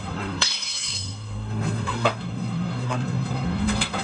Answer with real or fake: fake